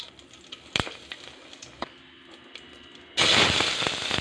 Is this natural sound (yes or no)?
yes